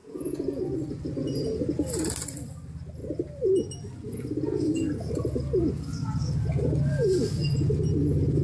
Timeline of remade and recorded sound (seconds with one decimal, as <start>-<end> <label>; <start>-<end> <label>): 0.0-0.6 remade; 0.6-8.4 recorded